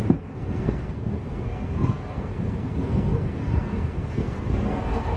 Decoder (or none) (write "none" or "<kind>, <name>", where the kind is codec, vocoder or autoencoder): codec, SNAC